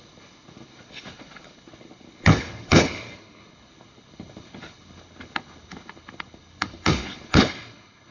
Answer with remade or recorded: remade